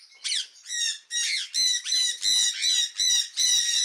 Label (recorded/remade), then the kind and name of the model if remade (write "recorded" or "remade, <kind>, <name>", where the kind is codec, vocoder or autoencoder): recorded